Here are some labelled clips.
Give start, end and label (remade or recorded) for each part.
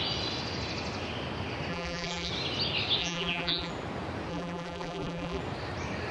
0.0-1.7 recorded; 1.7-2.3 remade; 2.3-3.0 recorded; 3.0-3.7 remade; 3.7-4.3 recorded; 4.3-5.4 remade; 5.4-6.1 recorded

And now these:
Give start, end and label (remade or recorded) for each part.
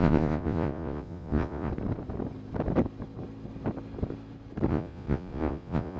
0.0-1.7 remade; 1.7-4.7 recorded; 4.7-6.0 remade